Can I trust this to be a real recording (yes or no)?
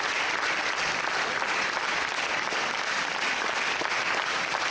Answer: yes